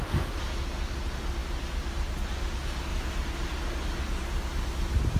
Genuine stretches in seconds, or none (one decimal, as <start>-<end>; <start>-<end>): 0.0-5.2